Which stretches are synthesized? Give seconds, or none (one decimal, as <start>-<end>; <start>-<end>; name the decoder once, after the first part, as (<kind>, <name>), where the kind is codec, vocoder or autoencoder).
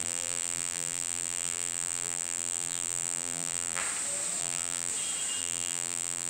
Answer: 0.0-3.8 (vocoder, BigVGAN v2); 4.4-4.9; 5.4-6.3